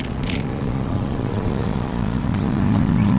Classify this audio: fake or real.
fake